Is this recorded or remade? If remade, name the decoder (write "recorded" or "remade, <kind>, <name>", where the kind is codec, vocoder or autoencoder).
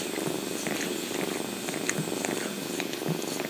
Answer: recorded